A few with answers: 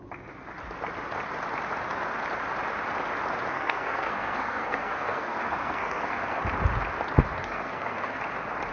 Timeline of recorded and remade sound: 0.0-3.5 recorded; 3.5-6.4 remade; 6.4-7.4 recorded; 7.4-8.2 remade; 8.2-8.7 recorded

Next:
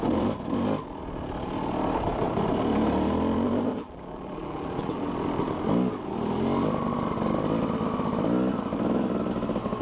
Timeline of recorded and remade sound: 0.0-3.7 recorded; 3.7-5.1 remade; 5.1-9.8 recorded

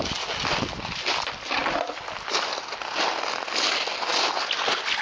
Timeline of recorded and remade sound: 0.0-5.0 recorded